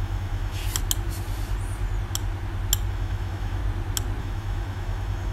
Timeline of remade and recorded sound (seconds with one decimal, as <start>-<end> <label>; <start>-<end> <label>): 0.0-0.6 remade; 0.6-2.9 recorded; 2.9-3.6 remade; 3.6-4.2 recorded; 4.2-5.3 remade